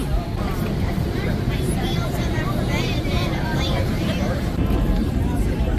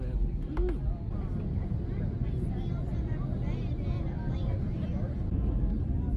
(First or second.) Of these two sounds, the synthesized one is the first